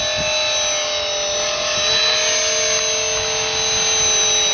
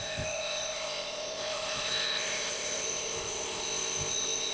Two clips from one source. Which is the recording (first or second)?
first